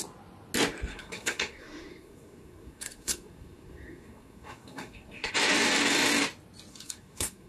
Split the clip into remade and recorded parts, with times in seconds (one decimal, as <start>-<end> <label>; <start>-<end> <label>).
0.0-0.9 recorded; 0.9-5.3 remade; 5.3-6.7 recorded; 6.7-7.5 remade